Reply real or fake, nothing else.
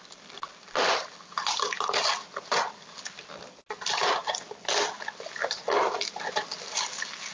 real